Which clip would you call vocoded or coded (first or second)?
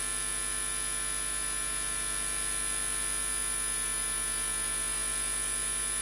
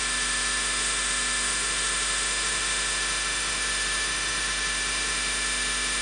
second